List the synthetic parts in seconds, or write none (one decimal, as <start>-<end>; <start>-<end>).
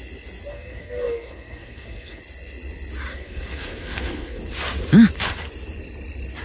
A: 0.5-2.2; 3.1-4.4